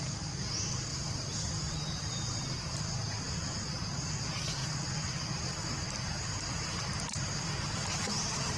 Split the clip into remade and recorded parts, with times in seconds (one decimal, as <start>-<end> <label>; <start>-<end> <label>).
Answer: 0.0-0.9 recorded; 0.9-2.8 remade; 2.8-4.6 recorded; 4.6-8.6 remade